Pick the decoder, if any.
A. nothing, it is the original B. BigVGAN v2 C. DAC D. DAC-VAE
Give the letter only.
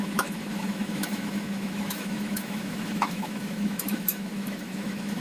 D